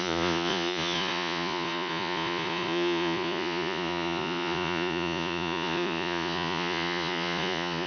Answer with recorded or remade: remade